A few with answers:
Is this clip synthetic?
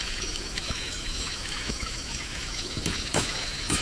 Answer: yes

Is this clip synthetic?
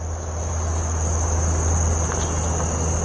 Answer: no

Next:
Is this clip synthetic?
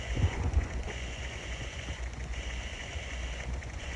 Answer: yes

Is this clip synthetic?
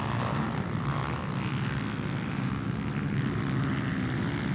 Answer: no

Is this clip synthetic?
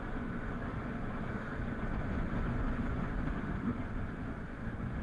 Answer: yes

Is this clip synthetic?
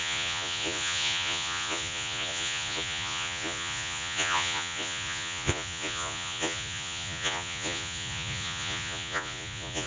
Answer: yes